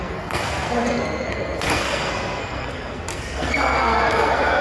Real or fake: fake